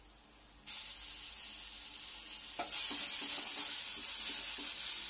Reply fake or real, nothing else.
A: real